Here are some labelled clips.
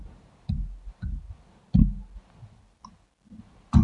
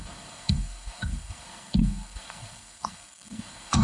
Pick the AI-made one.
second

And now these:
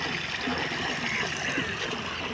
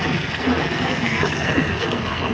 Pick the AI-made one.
second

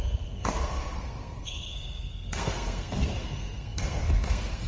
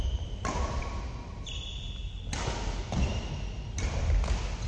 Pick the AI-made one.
first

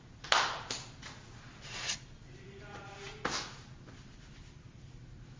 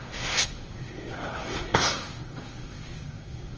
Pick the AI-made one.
second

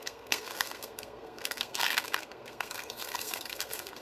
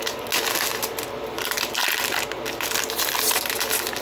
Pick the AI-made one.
first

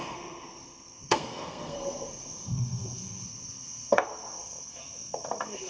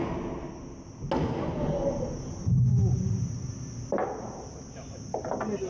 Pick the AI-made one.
first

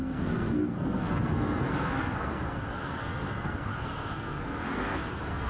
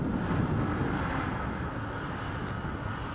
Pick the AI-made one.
first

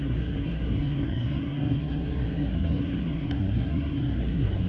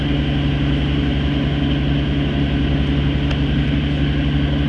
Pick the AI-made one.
first